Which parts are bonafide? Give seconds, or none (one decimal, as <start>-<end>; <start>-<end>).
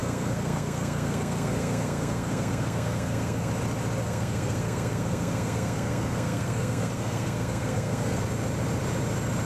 3.5-4.0; 8.2-9.5